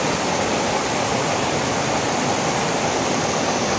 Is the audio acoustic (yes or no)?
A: yes